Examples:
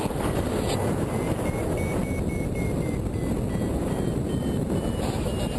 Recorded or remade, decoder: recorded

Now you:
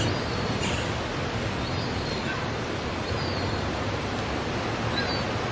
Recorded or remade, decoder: recorded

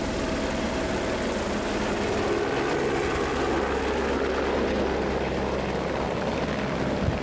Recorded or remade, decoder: recorded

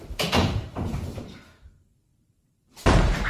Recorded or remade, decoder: remade, vocoder, BigVGAN v2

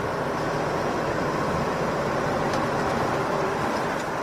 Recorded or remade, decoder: remade, vocoder, BigVGAN v2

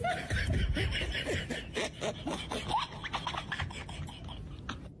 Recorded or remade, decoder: recorded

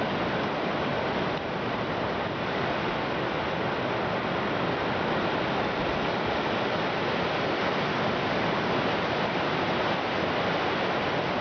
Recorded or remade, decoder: recorded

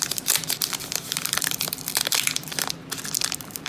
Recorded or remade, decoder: remade, vocoder, BigVGAN v2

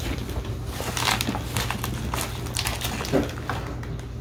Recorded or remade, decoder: recorded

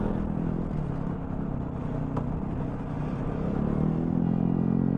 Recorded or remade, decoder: recorded